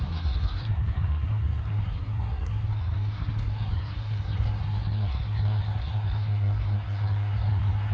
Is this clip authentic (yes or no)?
no